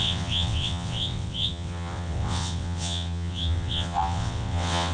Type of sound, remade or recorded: remade